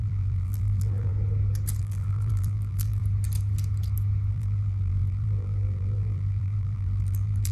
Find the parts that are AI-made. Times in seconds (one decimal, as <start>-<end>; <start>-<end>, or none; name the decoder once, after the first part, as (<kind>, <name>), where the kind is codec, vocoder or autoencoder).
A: 0.0-1.1 (vocoder, BigVGAN v2); 1.8-3.0; 4.3-7.5